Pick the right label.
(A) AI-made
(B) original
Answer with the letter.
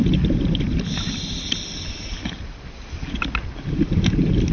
B